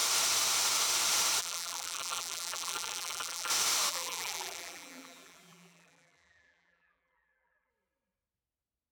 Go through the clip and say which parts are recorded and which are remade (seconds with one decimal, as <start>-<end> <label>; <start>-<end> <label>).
0.0-1.4 recorded; 1.4-3.5 remade; 3.5-3.9 recorded; 3.9-7.7 remade; 7.7-8.9 recorded

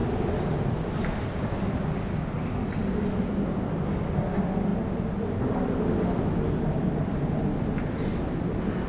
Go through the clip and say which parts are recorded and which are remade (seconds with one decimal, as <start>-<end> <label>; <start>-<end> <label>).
0.0-0.5 remade; 0.5-8.9 recorded

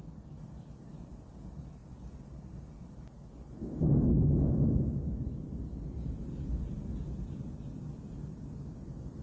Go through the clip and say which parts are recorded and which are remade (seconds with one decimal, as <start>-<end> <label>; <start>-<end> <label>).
0.0-9.2 recorded

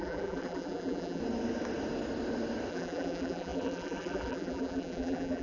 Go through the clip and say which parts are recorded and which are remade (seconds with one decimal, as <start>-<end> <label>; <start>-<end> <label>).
0.0-1.2 remade; 1.2-2.7 recorded; 2.7-5.4 remade

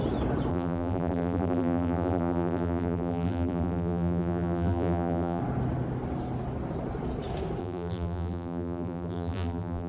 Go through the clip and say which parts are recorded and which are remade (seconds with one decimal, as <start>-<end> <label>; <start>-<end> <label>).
0.0-0.5 recorded; 0.5-5.4 remade; 5.4-7.6 recorded; 7.6-9.9 remade

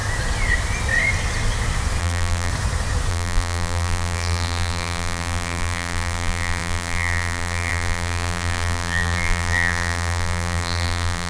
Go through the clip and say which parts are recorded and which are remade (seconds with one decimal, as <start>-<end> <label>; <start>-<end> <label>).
0.0-2.0 recorded; 2.0-2.5 remade; 2.5-3.1 recorded; 3.1-11.3 remade

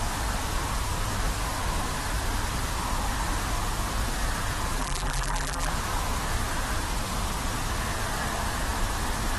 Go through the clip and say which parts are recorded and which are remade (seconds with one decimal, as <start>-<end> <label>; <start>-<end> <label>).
0.0-4.8 recorded; 4.8-5.7 remade; 5.7-9.4 recorded

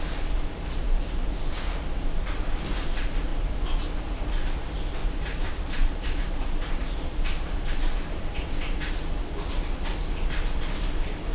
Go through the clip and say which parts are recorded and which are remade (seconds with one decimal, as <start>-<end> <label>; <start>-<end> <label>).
0.0-5.0 recorded; 5.0-8.2 remade; 8.2-11.3 recorded